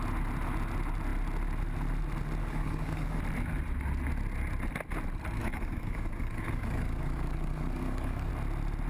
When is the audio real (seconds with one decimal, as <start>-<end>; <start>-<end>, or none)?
0.0-2.4; 3.2-5.4; 8.3-8.9